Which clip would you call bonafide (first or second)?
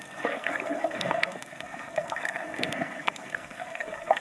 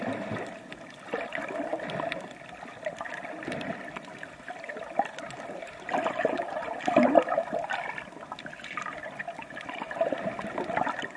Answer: second